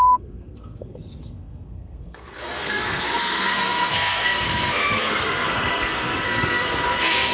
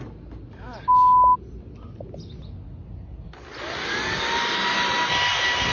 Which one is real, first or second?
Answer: second